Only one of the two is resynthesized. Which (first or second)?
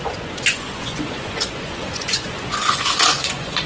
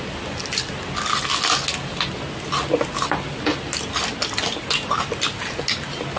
first